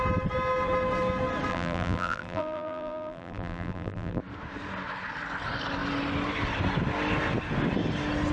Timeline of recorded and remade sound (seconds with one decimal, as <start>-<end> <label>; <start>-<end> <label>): 0.0-1.5 recorded; 1.5-4.2 remade; 4.2-8.3 recorded